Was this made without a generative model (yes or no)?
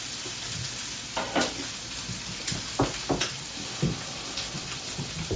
yes